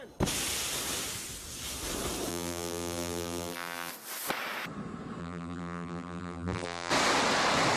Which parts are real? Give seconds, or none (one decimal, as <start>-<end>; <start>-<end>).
0.0-2.3; 3.9-5.2; 6.9-7.8